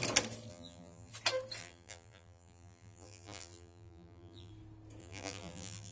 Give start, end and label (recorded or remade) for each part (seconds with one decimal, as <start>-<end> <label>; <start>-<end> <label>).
0.0-0.5 recorded; 0.5-1.1 remade; 1.1-1.6 recorded; 1.6-4.5 remade; 4.5-5.0 recorded; 5.0-5.9 remade